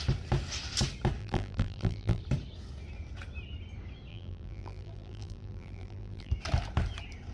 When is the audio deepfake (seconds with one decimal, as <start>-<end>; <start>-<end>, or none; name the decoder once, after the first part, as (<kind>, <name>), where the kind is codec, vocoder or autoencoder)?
1.2-2.2 (vocoder, BigVGAN v2); 4.1-6.3